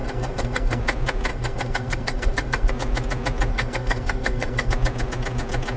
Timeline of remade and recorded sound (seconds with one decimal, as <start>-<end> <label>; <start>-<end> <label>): 0.0-0.8 remade; 0.8-1.3 recorded; 1.3-2.7 remade; 2.7-3.5 recorded; 3.5-4.7 remade; 4.7-5.8 recorded